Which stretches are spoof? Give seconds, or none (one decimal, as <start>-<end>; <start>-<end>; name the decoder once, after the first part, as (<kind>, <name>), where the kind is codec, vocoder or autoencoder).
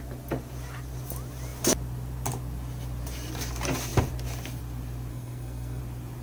5.1-5.8 (codec, SNAC)